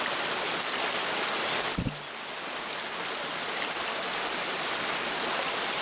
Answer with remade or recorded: recorded